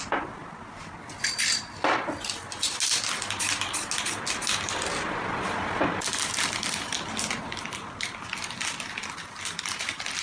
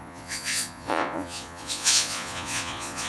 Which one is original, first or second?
first